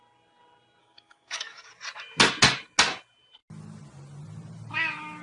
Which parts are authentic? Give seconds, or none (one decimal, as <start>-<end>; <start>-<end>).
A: 0.0-0.8; 1.7-5.2